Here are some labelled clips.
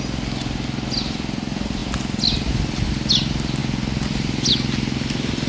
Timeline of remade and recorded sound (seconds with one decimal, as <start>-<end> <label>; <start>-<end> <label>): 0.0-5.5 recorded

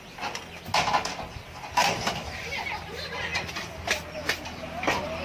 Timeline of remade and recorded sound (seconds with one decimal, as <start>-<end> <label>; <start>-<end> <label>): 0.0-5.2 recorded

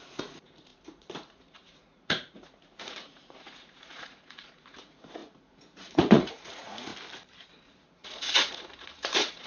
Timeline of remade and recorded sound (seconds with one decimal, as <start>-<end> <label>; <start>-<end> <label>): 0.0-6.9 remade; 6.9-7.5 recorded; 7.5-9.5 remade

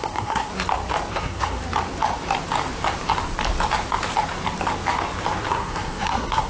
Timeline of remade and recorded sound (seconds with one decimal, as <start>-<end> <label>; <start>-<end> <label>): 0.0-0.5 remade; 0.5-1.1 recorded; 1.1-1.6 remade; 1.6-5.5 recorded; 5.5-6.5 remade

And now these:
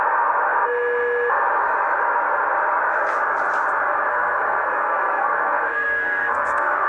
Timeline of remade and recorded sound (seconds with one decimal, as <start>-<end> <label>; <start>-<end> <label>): 0.0-4.1 recorded; 4.1-6.9 remade

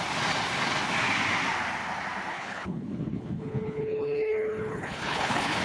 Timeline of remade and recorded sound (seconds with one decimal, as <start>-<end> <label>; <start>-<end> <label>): 0.0-2.3 recorded; 2.3-5.6 remade

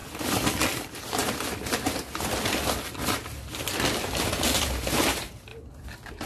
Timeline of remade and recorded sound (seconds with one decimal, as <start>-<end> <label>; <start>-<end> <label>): 0.0-0.6 recorded; 0.6-1.2 remade; 1.2-5.0 recorded; 5.0-5.5 remade; 5.5-6.3 recorded

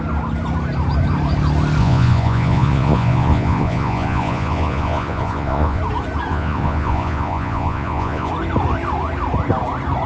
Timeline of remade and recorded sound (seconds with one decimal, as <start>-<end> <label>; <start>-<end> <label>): 0.0-1.8 recorded; 1.8-5.8 remade; 5.8-6.3 recorded; 6.3-8.3 remade; 8.3-10.1 recorded